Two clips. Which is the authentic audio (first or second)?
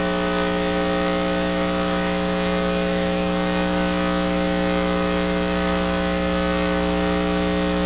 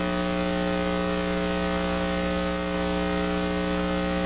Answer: second